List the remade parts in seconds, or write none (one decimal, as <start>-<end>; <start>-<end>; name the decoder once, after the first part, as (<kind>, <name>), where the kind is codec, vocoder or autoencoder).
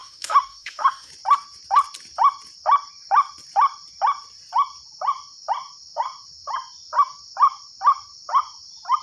0.0-1.1 (autoencoder, DAC-VAE)